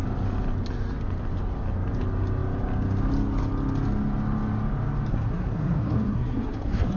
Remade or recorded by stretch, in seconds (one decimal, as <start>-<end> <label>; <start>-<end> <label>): 0.0-5.1 recorded; 5.1-7.0 remade